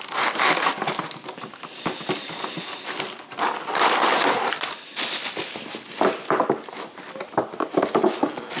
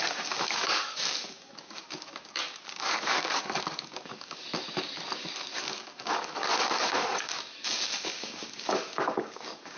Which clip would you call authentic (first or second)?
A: first